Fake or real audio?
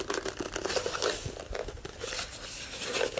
real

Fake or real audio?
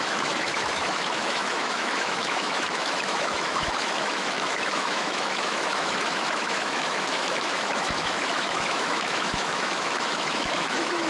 fake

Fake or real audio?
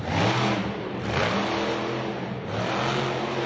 real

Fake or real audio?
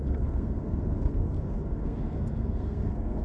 fake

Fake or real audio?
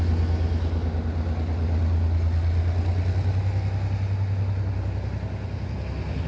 real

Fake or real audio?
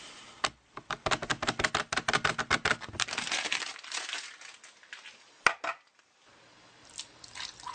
real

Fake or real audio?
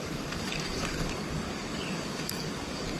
fake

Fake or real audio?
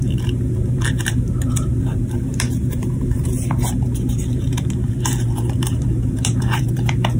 fake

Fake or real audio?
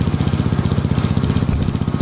real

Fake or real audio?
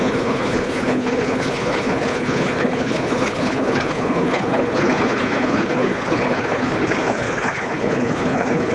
fake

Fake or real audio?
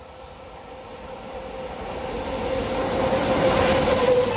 fake